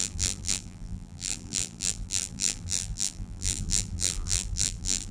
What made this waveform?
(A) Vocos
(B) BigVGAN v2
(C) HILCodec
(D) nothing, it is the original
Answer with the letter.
B